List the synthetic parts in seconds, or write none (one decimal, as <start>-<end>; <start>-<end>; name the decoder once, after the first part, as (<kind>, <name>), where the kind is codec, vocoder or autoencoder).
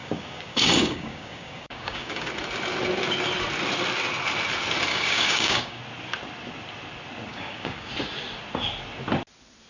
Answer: 0.0-2.3 (codec, DAC); 4.9-5.8; 7.3-7.9